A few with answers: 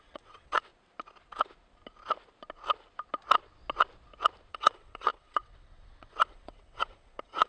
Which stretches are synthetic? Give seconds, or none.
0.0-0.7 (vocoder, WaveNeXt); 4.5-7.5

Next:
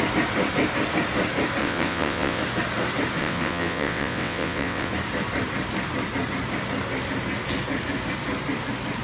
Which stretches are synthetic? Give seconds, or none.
1.6-2.4 (vocoder, WaveNeXt); 3.2-4.9

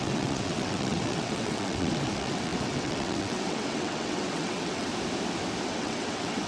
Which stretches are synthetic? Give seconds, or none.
0.0-4.9 (vocoder, WaveNeXt); 5.7-6.5

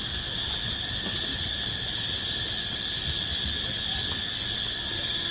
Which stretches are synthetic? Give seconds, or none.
none